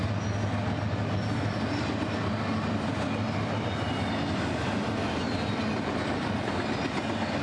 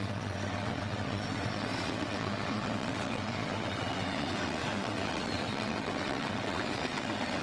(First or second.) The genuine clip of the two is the first